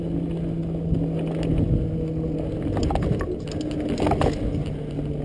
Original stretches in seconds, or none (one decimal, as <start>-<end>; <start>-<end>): 0.0-5.2

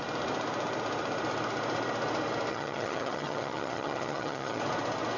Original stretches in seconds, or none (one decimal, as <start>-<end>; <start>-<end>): 0.0-2.5; 4.6-5.2

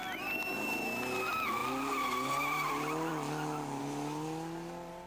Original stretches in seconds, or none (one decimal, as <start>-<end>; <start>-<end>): 0.0-5.1

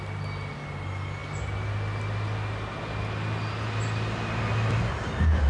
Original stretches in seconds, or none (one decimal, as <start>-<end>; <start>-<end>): 0.0-5.5

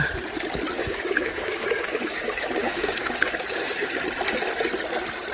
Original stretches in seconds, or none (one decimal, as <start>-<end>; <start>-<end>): 0.0-0.8; 4.0-5.3

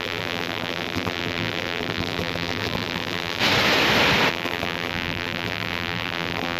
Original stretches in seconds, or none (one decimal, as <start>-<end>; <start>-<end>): 3.4-4.3

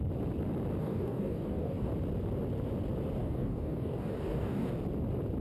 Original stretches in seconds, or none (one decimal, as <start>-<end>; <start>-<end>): 0.0-0.8; 1.9-3.2; 4.7-5.4

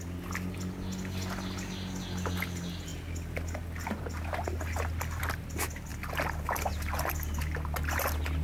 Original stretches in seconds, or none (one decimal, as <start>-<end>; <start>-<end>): 0.0-8.4